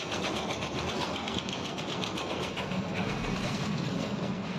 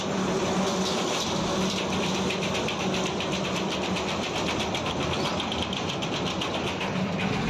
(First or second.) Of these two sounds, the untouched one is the second